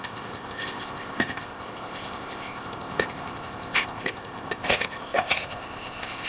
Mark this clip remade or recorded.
remade